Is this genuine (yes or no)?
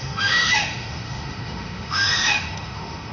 no